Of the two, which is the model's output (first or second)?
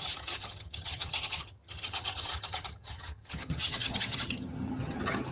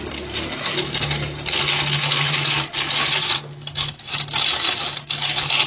first